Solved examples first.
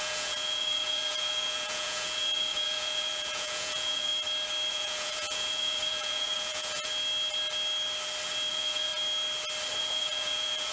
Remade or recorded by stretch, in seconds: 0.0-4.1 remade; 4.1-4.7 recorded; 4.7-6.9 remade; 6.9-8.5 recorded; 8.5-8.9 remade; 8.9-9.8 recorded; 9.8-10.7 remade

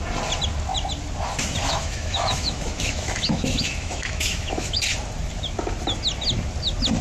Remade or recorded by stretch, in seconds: 0.0-1.6 recorded; 1.6-4.8 remade; 4.8-7.0 recorded

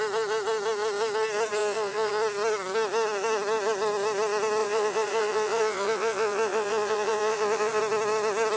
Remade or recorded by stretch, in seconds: 0.0-1.6 recorded; 1.6-2.1 remade; 2.1-4.6 recorded; 4.6-7.8 remade; 7.8-8.6 recorded

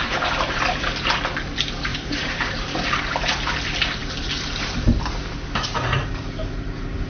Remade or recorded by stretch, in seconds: 0.0-0.6 remade; 0.6-1.9 recorded; 1.9-2.6 remade; 2.6-7.1 recorded

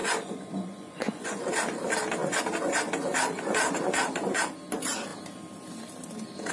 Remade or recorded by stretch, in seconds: 0.0-1.5 remade; 1.5-6.5 recorded

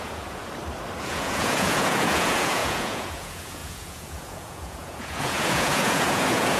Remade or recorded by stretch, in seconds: 0.0-0.4 remade; 0.4-1.0 recorded; 1.0-6.6 remade

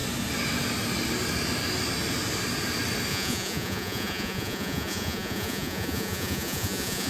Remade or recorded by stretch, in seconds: 0.0-3.1 recorded; 3.1-7.1 remade